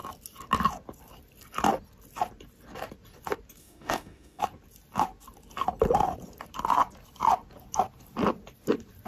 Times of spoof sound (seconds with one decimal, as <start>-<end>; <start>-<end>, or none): 3.6-4.4